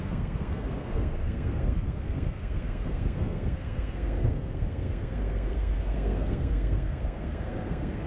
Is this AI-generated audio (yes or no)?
yes